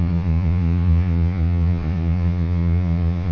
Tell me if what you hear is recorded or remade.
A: remade